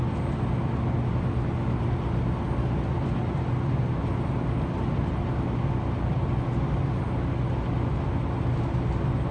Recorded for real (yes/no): yes